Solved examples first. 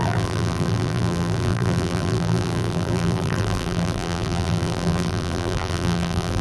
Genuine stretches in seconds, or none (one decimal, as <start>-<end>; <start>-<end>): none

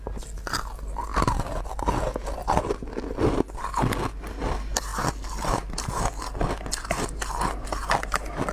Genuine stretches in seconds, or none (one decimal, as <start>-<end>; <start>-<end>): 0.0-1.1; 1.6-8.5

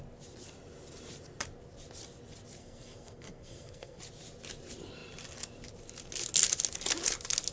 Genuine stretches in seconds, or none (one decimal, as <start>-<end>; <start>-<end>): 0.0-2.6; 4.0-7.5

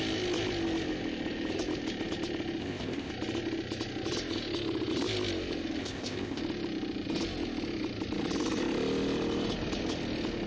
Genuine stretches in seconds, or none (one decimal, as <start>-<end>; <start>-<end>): 0.0-2.6; 3.1-5.8; 6.4-10.5

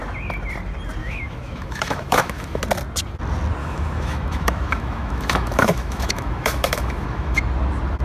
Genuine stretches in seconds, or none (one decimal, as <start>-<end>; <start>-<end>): 0.0-1.0; 2.6-3.6; 7.4-8.0